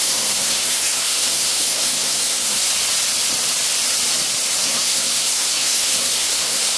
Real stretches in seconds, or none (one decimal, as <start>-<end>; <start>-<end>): 2.7-4.6